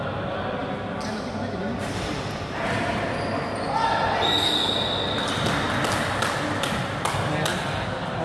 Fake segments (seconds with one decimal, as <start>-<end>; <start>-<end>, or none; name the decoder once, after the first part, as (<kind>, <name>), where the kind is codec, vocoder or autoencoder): none